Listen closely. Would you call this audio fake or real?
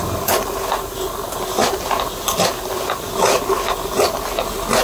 real